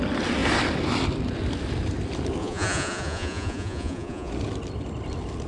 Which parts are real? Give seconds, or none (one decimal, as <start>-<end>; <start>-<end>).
0.0-2.4; 4.3-5.5

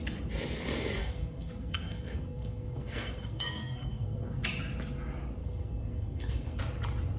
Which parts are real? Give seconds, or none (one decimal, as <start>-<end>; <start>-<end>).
0.0-1.0; 4.4-5.4; 6.6-7.2

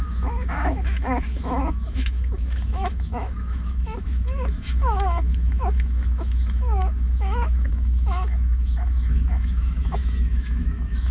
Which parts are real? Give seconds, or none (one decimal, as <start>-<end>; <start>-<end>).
none

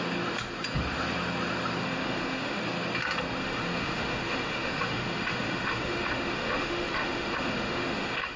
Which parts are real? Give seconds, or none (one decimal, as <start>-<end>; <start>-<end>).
0.0-1.8; 2.6-3.4

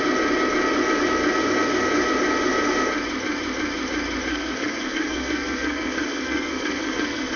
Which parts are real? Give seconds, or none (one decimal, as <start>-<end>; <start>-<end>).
0.0-4.3

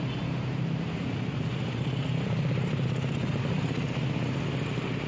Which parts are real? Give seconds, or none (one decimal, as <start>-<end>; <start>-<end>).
0.0-5.1

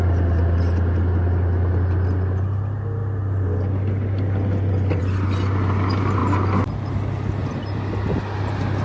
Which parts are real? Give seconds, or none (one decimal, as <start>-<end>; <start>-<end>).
0.0-8.8

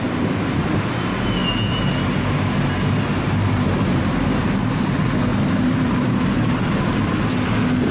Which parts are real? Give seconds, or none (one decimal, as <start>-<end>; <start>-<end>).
0.0-5.3; 6.3-7.9